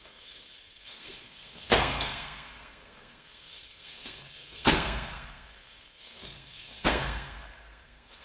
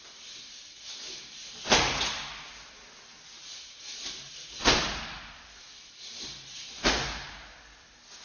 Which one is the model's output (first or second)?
first